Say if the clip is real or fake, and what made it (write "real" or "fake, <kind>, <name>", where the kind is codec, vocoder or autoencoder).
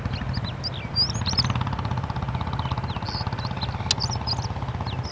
real